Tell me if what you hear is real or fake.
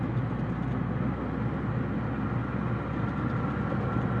real